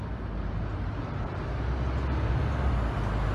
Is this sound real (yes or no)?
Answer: yes